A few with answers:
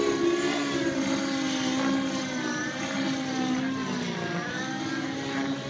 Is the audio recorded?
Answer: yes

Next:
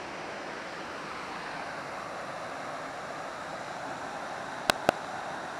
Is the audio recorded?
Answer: yes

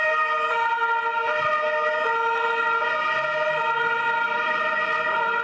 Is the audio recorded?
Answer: yes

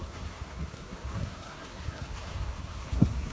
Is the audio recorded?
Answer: no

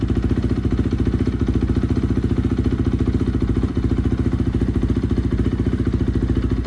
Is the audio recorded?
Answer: yes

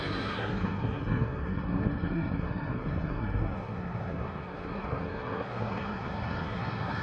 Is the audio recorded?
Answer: no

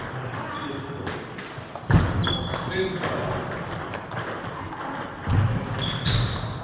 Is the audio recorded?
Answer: yes